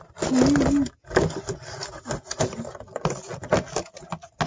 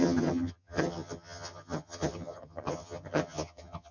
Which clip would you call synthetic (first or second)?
second